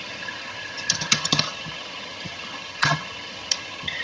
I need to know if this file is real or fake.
fake